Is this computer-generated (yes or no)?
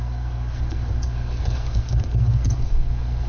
yes